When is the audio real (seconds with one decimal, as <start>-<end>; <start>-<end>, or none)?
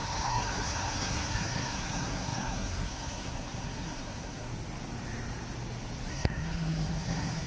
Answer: 4.5-6.1